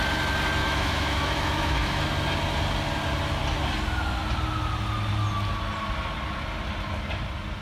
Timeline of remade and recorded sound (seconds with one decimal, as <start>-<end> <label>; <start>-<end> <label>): 0.0-0.6 recorded; 0.6-2.0 remade; 2.0-7.6 recorded